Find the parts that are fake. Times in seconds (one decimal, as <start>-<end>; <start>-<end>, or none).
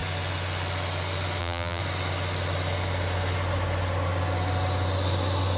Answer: 1.4-1.8